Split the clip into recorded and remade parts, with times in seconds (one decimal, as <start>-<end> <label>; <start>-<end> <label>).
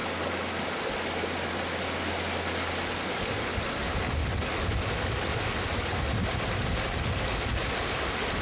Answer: 0.0-8.4 recorded